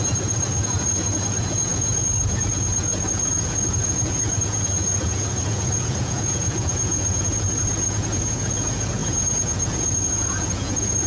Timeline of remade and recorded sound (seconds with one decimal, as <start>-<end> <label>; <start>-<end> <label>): 0.0-11.1 remade